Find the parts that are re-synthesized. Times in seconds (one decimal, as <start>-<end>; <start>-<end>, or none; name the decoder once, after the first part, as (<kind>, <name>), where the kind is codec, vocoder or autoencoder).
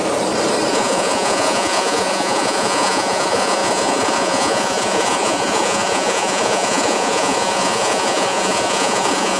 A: 0.7-9.4 (vocoder, Vocos)